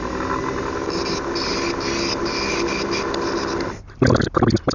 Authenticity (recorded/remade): recorded